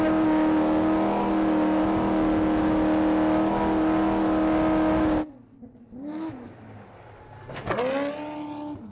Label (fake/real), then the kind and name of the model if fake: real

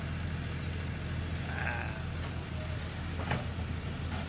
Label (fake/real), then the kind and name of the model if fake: real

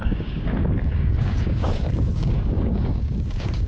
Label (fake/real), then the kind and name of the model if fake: fake, codec, DAC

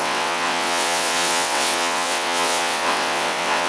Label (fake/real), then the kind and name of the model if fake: fake, vocoder, WaveNeXt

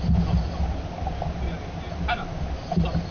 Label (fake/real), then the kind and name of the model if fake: real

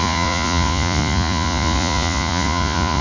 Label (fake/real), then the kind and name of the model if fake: fake, vocoder, Vocos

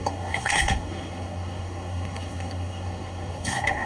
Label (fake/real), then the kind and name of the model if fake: fake, codec, SNAC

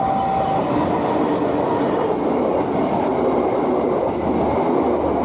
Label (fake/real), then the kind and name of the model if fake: real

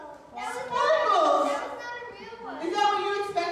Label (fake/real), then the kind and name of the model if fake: real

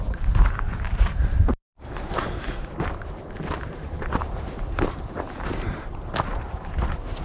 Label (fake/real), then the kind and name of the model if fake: fake, vocoder, BigVGAN v2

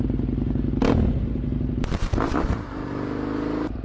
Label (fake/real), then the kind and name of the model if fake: real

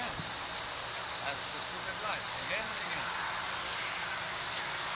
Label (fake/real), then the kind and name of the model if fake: real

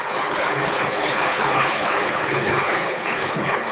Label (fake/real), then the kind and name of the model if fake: fake, codec, HILCodec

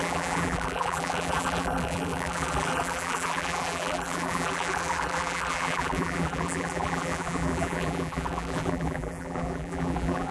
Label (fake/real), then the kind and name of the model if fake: fake, vocoder, BigVGAN v2